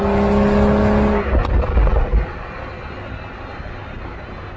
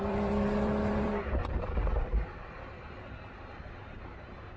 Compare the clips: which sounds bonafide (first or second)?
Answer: first